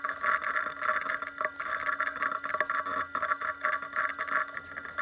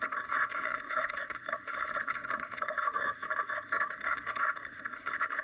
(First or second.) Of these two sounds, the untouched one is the first